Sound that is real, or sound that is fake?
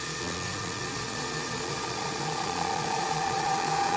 fake